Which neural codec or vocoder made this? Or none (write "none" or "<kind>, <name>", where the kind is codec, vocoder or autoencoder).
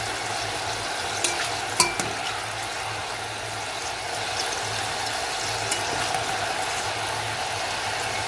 none